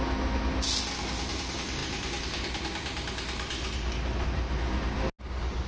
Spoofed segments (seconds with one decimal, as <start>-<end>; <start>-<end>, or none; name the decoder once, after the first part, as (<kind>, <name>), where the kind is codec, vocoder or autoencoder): none